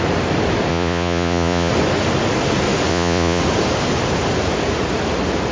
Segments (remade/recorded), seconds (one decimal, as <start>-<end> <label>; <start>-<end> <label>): 0.0-0.7 recorded; 0.7-1.7 remade; 1.7-2.9 recorded; 2.9-3.4 remade; 3.4-5.5 recorded